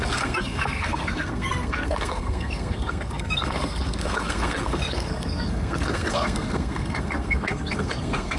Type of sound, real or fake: fake